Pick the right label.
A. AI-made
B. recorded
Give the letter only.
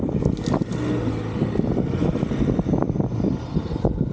B